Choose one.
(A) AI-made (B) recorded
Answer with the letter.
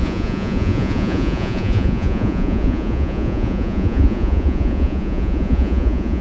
A